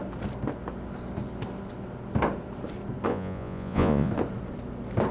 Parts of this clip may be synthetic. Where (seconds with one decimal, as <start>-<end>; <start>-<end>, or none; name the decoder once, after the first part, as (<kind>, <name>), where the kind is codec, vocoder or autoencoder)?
3.1-4.1 (vocoder, Vocos)